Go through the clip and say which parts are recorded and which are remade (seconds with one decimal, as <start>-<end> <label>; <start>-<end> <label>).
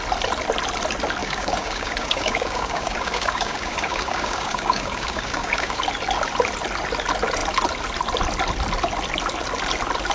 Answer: 0.0-1.2 recorded; 1.2-5.8 remade; 5.8-10.1 recorded